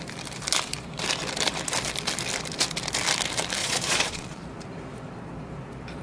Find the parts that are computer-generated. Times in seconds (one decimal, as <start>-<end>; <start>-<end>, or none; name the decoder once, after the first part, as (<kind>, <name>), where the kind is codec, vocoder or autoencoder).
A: 3.6-4.4 (vocoder, Vocos)